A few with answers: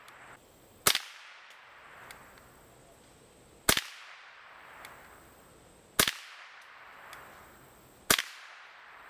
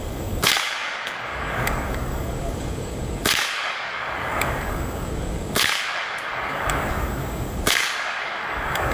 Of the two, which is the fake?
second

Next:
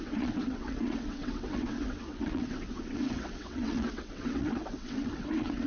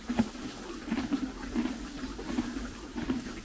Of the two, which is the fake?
first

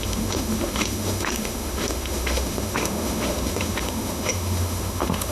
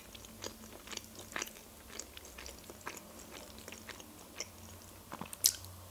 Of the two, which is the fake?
first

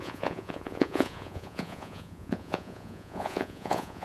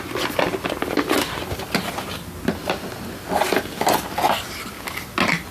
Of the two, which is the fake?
first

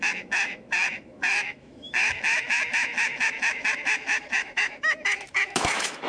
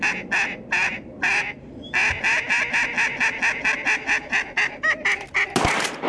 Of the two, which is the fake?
first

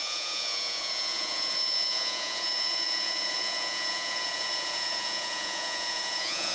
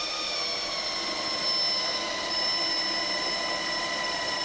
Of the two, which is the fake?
first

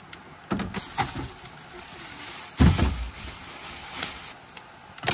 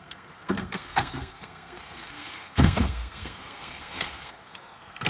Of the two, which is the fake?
second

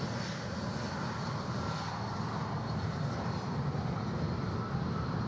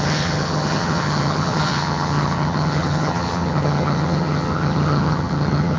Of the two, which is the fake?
second